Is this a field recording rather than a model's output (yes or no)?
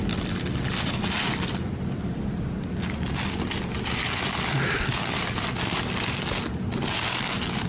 yes